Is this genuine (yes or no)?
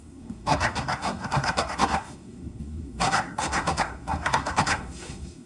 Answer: no